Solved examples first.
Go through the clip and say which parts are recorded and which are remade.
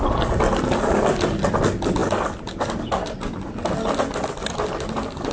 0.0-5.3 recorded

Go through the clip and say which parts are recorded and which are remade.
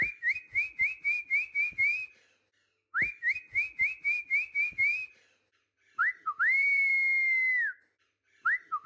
0.0-6.0 recorded; 6.0-6.9 remade; 6.9-8.9 recorded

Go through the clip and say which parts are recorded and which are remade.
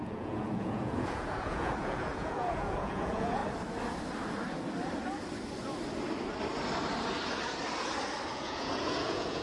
0.0-3.4 remade; 3.4-8.3 recorded; 8.3-9.4 remade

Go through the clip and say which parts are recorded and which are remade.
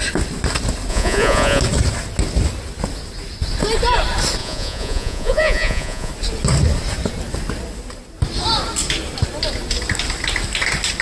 0.0-0.9 recorded; 0.9-1.6 remade; 1.6-4.4 recorded; 4.4-6.1 remade; 6.1-11.0 recorded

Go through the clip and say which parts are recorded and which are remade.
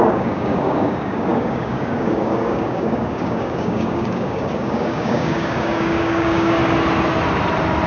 0.0-6.6 remade; 6.6-7.9 recorded